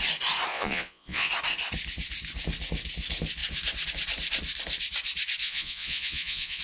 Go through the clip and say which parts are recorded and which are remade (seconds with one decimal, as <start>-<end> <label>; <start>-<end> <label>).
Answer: 0.0-0.5 recorded; 0.5-1.3 remade; 1.3-5.4 recorded; 5.4-6.6 remade